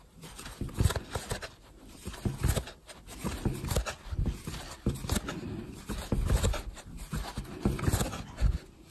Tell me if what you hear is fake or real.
real